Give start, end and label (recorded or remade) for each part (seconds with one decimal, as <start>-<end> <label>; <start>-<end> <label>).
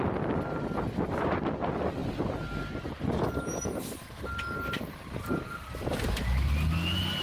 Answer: 0.0-7.2 recorded